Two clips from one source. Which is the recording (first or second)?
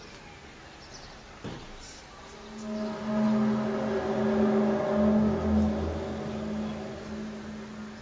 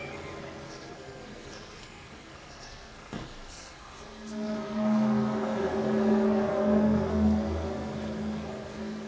first